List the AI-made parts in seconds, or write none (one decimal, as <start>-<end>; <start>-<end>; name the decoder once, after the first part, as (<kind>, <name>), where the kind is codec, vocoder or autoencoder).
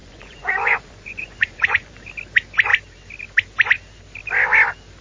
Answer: 0.0-1.9 (vocoder, Vocos)